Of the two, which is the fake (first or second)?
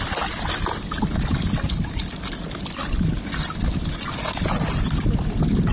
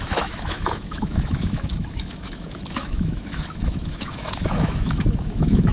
second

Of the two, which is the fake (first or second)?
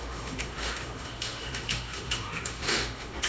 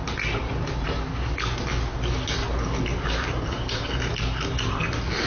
first